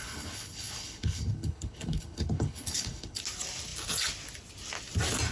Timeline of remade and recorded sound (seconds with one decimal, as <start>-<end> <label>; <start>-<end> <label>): 0.0-3.2 remade; 3.2-5.3 recorded